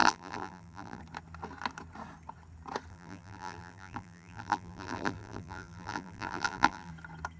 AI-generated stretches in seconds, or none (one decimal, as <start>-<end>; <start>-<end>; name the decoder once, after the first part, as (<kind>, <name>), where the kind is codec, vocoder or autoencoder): 0.0-1.0 (vocoder, BigVGAN v2); 2.9-6.9